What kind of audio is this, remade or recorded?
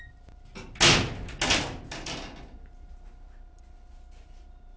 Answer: recorded